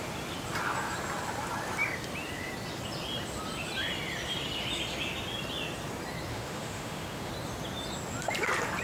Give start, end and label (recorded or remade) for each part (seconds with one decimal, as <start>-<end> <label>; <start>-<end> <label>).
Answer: 0.0-6.3 recorded; 6.3-7.3 remade; 7.3-8.8 recorded